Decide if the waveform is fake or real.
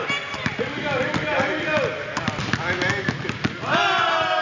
real